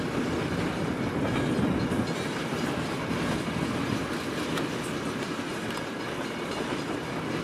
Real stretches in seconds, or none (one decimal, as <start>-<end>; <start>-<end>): 0.0-5.5; 6.8-7.4